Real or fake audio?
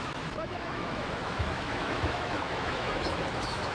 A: fake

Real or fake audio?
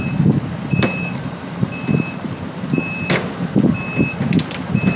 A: real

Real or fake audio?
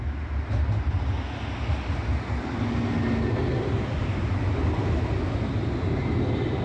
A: real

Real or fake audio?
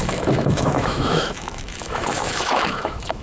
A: fake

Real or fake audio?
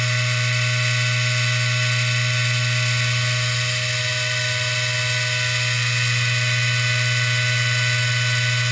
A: real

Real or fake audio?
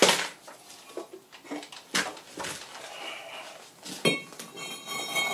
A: real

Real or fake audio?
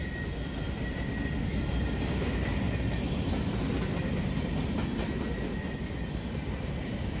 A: real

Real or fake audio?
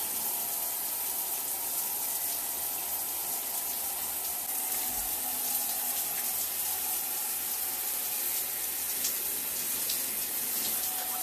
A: real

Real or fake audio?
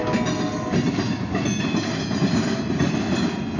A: real